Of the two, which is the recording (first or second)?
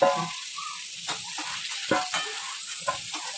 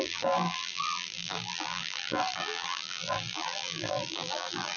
first